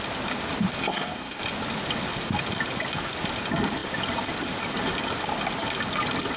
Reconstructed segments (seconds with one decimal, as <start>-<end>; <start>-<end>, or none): 0.9-1.4